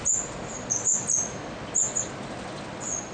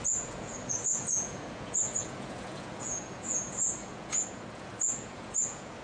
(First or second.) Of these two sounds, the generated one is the second